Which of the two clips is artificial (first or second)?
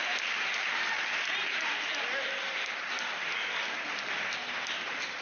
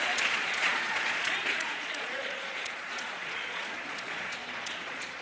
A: second